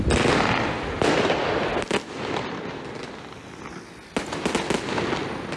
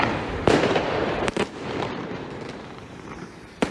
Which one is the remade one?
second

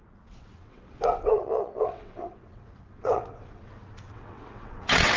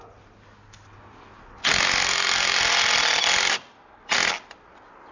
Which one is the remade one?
first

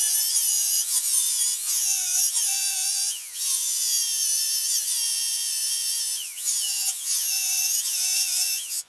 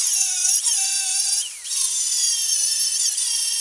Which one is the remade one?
first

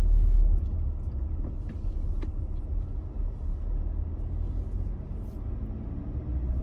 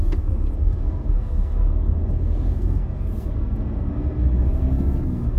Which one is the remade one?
second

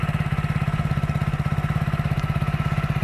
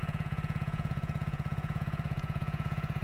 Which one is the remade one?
second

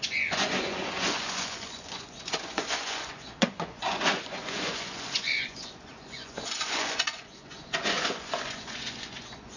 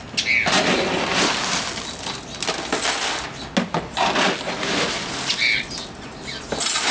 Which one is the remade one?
first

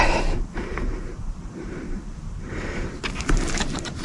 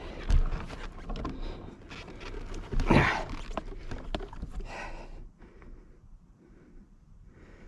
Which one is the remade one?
first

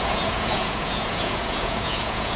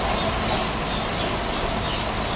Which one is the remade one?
first